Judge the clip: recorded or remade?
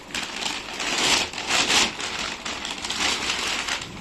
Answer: recorded